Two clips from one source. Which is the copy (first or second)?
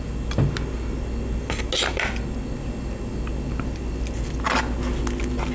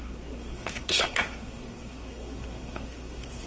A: second